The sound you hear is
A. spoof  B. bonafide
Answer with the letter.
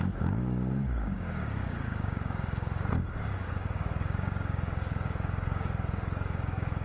A